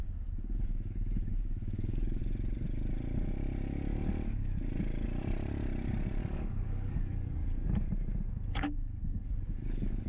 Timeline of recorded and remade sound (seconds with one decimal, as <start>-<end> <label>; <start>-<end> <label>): 0.0-2.2 remade; 2.2-6.2 recorded; 6.2-7.4 remade; 7.4-8.5 recorded; 8.5-10.1 remade